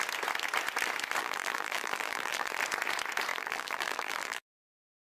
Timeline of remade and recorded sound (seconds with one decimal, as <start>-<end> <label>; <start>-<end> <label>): 0.0-1.2 recorded; 1.2-2.6 remade; 2.6-3.3 recorded; 3.3-5.0 remade